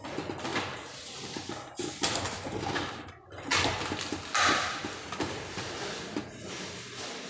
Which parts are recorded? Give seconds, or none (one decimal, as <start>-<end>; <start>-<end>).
0.0-7.3

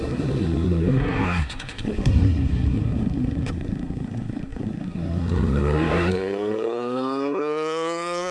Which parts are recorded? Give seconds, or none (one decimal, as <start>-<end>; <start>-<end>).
none

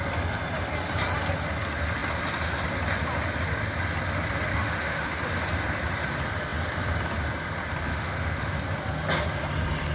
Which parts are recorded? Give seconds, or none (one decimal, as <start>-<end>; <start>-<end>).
0.0-4.5; 5.2-7.9; 8.6-9.9

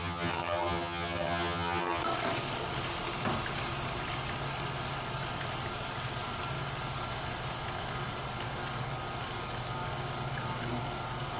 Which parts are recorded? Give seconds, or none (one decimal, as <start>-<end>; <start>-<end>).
2.0-11.4

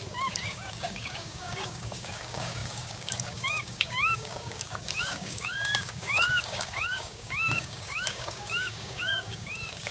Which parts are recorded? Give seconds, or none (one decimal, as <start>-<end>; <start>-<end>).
none

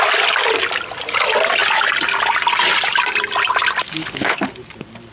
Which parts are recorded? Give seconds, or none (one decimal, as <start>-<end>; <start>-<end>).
0.0-4.0; 4.5-5.1

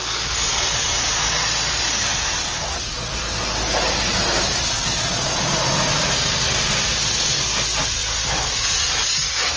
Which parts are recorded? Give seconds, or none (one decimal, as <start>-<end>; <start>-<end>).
0.0-9.6

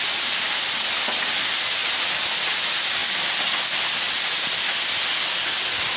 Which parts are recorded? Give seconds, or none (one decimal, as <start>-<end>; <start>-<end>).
0.0-6.0